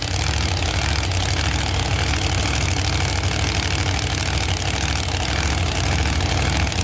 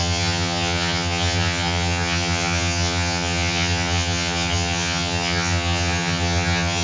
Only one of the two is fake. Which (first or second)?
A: second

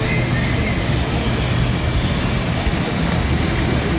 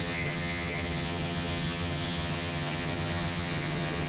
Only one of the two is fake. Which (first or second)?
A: second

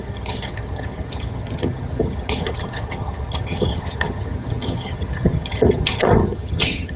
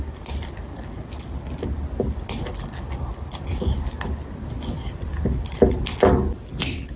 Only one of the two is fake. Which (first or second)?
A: first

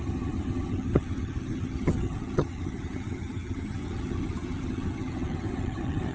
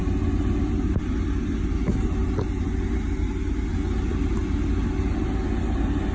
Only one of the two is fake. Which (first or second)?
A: first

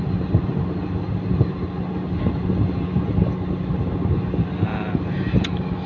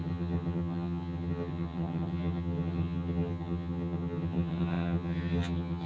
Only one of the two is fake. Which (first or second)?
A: second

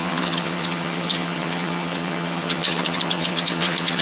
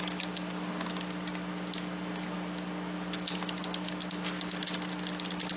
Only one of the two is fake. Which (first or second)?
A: first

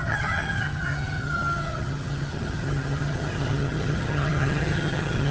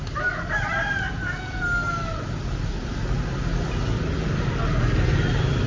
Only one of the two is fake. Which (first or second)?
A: first